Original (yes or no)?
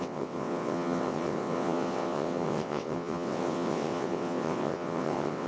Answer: no